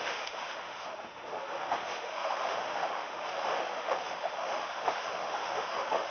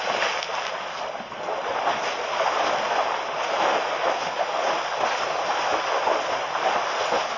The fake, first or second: first